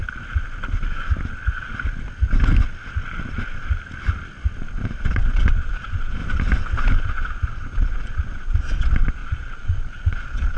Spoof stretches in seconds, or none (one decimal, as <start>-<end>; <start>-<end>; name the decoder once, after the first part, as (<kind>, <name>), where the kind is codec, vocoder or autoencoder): 5.0-6.2 (vocoder, Vocos); 7.0-10.6